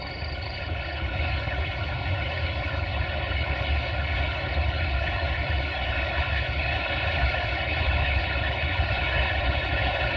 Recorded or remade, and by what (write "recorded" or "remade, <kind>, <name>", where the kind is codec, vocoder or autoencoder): remade, codec, HILCodec